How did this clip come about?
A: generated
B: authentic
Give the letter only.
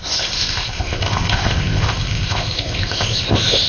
A